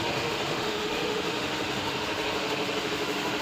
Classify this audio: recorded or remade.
remade